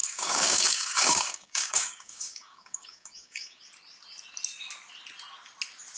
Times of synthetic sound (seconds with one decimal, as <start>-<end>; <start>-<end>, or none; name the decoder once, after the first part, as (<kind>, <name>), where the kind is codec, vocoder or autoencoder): 0.0-3.6 (codec, DAC)